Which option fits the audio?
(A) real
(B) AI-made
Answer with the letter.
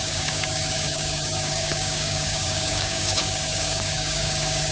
B